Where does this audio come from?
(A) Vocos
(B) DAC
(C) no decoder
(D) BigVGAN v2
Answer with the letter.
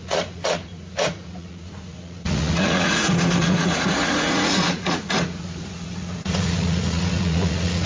A